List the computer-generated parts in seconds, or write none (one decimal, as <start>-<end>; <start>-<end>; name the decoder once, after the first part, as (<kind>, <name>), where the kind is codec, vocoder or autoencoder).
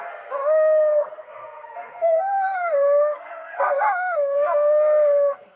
0.0-5.6 (codec, SNAC)